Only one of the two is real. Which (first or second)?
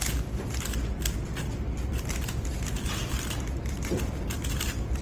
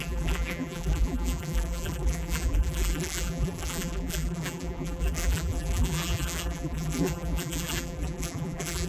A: first